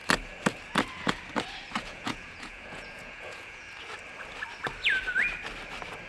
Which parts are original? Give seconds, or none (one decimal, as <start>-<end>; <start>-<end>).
0.0-1.7; 3.7-6.1

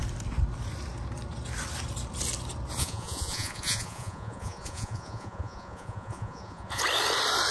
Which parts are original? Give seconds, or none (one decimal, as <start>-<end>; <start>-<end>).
0.0-2.8; 6.8-7.5

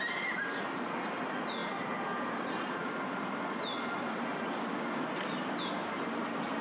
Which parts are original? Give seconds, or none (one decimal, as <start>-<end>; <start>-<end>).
0.0-6.6

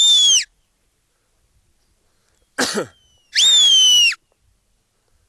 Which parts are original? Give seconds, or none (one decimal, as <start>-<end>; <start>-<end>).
0.0-5.3

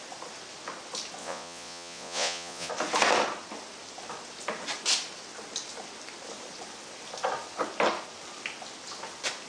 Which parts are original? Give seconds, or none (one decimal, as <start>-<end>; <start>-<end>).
0.0-1.2; 2.7-9.5